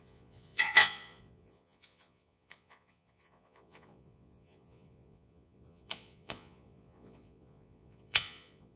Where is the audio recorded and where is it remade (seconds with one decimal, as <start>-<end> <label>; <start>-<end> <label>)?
0.0-8.8 remade